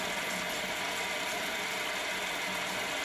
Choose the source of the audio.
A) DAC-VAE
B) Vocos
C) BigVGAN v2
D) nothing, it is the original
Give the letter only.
D